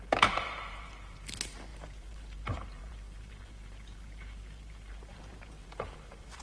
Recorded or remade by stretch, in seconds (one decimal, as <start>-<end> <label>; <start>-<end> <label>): 0.0-6.4 remade